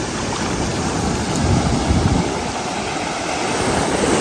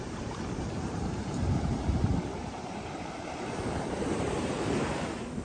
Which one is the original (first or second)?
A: first